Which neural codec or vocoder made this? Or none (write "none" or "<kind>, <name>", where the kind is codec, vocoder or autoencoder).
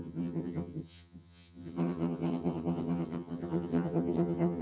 vocoder, HiFi-GAN